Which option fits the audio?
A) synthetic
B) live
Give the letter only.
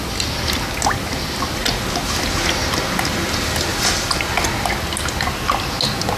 B